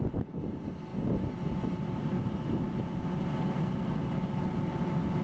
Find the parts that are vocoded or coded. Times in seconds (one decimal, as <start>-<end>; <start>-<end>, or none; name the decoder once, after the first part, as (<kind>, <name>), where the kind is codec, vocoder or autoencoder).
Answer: 3.4-4.0 (codec, SNAC)